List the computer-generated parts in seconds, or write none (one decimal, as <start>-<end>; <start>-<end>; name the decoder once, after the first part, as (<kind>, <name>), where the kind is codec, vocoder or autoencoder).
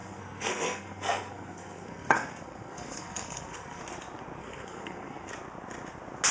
0.0-3.8 (codec, SNAC); 4.4-5.3